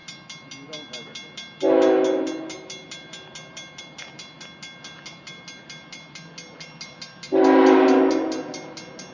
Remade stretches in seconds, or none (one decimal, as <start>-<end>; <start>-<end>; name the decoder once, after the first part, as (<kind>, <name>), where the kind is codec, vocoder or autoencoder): none